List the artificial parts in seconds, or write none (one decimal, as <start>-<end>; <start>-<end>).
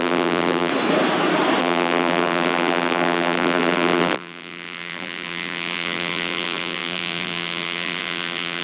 0.0-0.7; 1.6-8.6